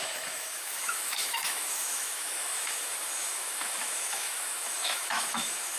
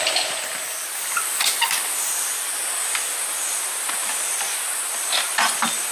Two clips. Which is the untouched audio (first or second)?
second